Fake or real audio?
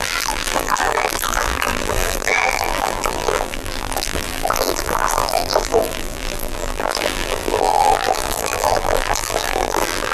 fake